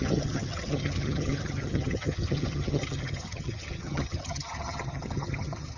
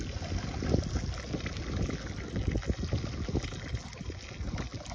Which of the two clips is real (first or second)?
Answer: second